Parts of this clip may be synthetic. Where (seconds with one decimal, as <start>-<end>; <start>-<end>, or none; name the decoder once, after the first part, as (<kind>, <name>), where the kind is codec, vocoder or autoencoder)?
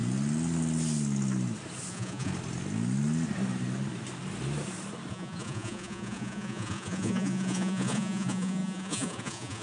1.9-2.3 (vocoder, Vocos); 5.1-9.6